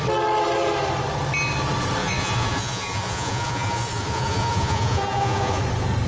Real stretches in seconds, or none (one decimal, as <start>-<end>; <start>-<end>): 0.0-2.0; 5.6-6.1